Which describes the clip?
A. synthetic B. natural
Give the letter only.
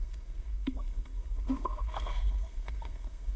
A